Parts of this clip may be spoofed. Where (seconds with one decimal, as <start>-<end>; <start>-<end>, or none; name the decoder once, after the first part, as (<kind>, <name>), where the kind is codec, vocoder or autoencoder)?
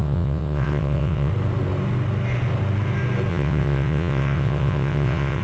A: 0.0-1.3 (vocoder, WaveNeXt); 3.3-5.4